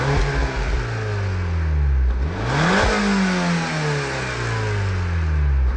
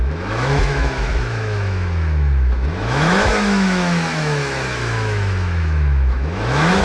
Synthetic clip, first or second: second